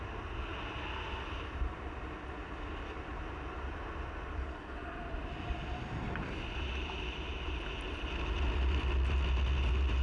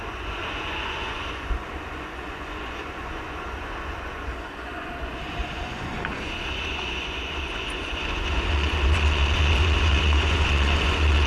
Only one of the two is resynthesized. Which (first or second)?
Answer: second